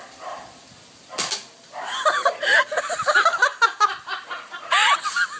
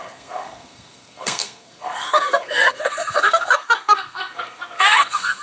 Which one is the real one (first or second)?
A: first